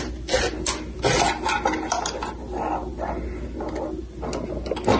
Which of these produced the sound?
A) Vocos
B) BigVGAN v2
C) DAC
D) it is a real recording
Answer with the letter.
D